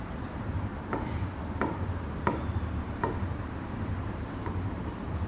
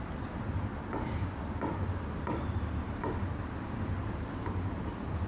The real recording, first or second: second